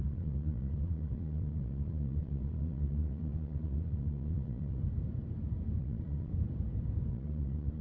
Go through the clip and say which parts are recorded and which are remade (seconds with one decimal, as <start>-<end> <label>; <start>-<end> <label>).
0.0-4.8 remade; 4.8-5.8 recorded; 5.8-6.3 remade; 6.3-7.1 recorded; 7.1-7.8 remade